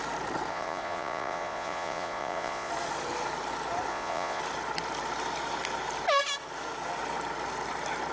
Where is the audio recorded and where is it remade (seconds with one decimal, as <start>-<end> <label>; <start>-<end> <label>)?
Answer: 0.0-0.5 recorded; 0.5-2.7 remade; 2.7-3.9 recorded; 3.9-4.4 remade; 4.4-8.1 recorded